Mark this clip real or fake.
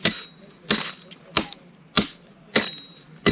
real